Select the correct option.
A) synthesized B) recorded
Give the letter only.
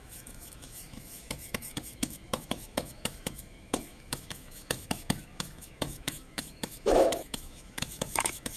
A